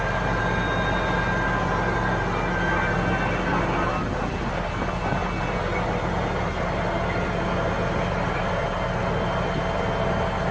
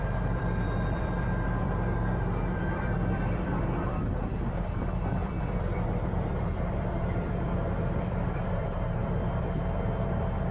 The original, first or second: first